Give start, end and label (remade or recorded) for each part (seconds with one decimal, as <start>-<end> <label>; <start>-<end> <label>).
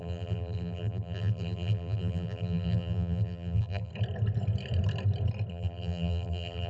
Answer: 0.0-3.9 remade; 3.9-5.5 recorded; 5.5-6.7 remade